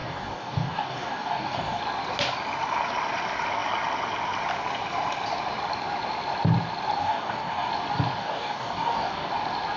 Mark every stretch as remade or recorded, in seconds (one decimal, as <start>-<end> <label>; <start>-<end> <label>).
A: 0.0-1.8 remade; 1.8-7.0 recorded; 7.0-7.7 remade; 7.7-8.2 recorded; 8.2-9.3 remade; 9.3-9.8 recorded